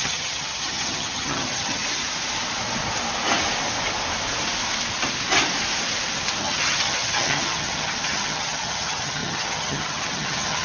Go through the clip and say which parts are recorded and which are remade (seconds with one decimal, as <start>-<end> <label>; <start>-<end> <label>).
0.0-1.8 remade; 1.8-6.4 recorded; 6.4-10.6 remade